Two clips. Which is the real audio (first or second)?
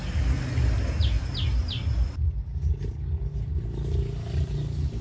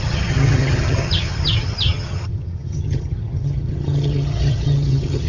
first